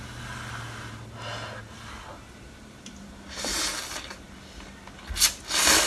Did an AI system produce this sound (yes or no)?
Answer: no